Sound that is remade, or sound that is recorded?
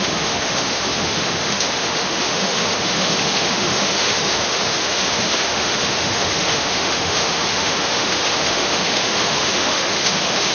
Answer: remade